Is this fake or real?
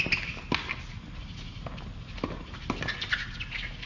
real